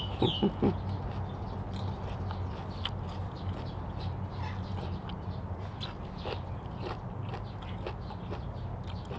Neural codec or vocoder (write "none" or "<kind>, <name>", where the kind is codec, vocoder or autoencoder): none